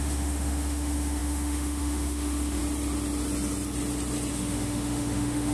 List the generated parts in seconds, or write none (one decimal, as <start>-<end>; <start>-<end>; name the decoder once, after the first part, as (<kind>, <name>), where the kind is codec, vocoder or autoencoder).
0.0-2.6 (autoencoder, DAC-VAE); 4.3-5.5